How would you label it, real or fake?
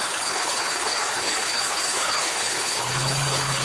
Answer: fake